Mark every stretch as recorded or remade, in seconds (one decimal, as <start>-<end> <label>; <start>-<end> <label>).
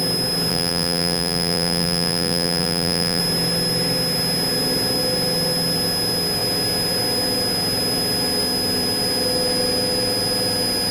0.0-0.5 recorded; 0.5-3.2 remade; 3.2-10.9 recorded